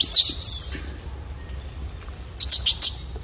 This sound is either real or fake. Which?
real